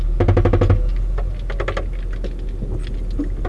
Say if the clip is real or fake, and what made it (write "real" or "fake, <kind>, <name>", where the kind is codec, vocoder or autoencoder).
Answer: real